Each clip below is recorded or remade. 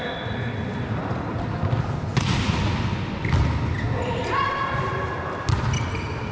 recorded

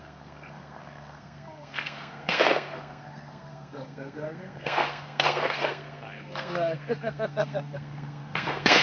remade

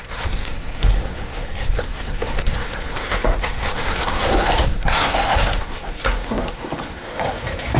remade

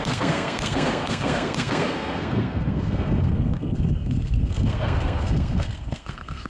remade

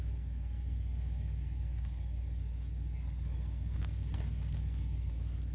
remade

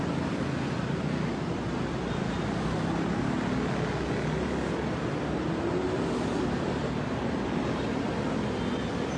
recorded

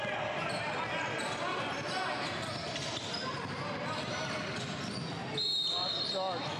recorded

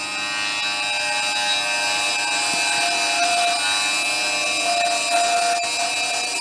recorded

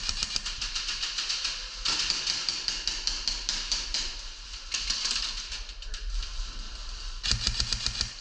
recorded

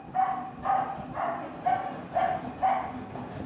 recorded